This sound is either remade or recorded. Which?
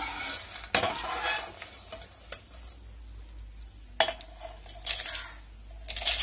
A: recorded